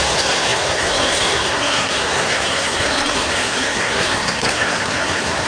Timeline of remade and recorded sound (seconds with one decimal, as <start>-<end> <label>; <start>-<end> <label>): 0.0-5.5 remade